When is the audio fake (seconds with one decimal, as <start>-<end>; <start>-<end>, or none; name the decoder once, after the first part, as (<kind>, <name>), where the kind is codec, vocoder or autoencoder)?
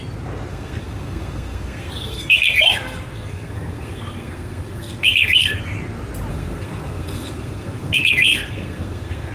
0.5-5.6 (codec, SNAC); 6.3-9.3